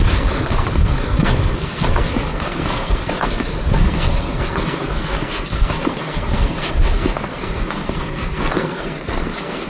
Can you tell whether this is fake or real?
fake